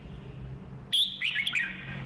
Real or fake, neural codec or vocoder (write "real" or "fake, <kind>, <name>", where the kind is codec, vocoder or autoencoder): real